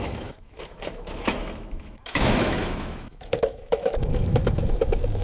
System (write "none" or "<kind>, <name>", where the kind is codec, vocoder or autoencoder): autoencoder, DAC-VAE